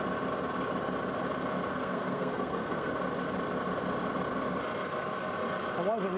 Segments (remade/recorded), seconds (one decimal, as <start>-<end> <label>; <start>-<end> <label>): 0.0-1.7 recorded; 1.7-2.9 remade; 2.9-6.2 recorded